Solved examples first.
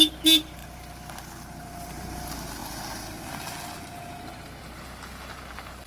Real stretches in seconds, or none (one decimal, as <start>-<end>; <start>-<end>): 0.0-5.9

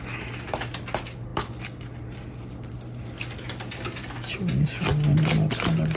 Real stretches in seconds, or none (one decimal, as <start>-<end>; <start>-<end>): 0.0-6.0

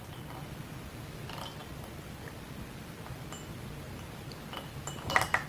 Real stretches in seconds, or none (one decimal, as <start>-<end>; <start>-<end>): 0.0-5.5

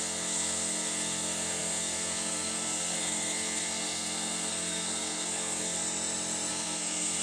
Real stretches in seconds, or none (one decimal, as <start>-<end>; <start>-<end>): 5.8-6.5